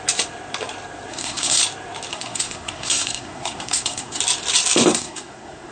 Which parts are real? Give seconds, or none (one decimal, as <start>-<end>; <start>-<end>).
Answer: 0.0-1.1; 1.6-2.1; 4.2-4.9